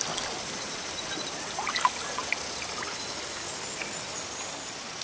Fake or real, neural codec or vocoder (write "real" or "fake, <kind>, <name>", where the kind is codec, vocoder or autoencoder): real